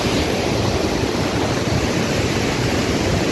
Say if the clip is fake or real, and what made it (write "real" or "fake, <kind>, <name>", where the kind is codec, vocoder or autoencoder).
fake, vocoder, BigVGAN v2